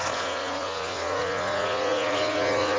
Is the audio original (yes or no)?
no